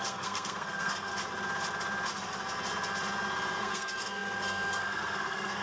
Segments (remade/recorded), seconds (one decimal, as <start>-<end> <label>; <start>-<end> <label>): 0.0-1.1 remade; 1.1-3.6 recorded; 3.6-5.6 remade